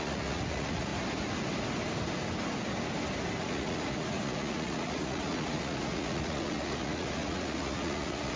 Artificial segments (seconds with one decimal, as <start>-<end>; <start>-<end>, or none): 0.0-0.9; 3.4-8.4